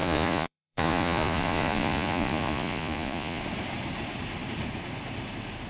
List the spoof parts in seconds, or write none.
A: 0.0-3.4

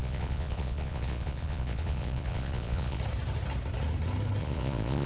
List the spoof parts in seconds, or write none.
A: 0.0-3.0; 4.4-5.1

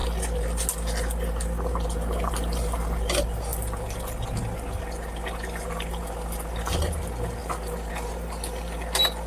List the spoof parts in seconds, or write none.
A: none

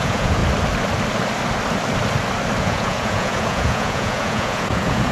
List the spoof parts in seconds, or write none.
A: 0.0-0.4; 2.6-5.1

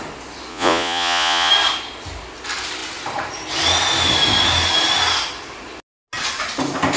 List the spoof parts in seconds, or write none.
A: 0.5-1.5

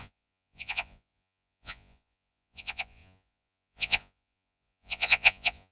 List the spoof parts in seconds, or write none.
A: 0.0-5.7